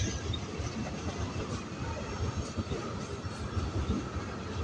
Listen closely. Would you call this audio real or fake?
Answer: real